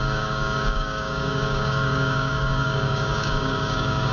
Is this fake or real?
fake